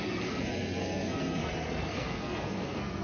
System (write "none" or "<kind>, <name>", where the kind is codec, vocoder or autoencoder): codec, SNAC